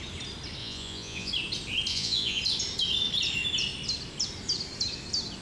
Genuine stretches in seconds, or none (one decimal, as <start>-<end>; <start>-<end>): 0.0-0.6; 1.3-1.9; 2.4-5.4